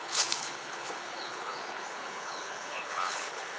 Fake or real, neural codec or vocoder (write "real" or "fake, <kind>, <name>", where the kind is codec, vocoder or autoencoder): fake, codec, HILCodec